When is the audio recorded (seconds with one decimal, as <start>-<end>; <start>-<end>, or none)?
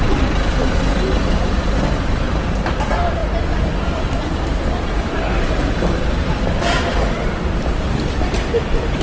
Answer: 0.0-9.0